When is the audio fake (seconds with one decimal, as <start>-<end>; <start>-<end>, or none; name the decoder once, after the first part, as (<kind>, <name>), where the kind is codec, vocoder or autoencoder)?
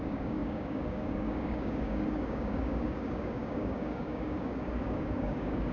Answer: 0.0-5.7 (codec, DAC)